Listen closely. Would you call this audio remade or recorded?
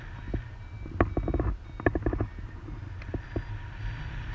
recorded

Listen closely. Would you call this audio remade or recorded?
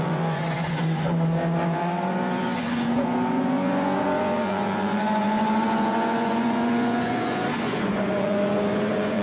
remade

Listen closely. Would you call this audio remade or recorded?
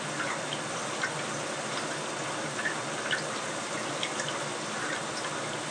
recorded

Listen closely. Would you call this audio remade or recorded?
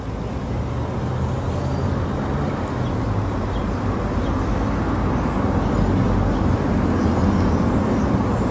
recorded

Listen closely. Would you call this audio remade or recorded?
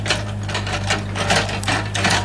recorded